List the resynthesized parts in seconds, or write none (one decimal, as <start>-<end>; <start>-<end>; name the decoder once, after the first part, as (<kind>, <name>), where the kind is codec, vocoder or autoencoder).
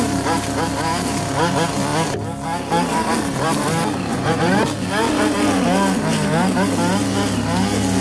4.1-4.6 (vocoder, Vocos)